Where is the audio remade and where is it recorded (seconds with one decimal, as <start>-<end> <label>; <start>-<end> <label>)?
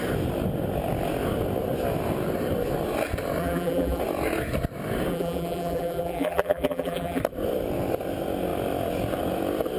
0.0-3.4 recorded; 3.4-4.0 remade; 4.0-5.1 recorded; 5.1-7.2 remade; 7.2-9.8 recorded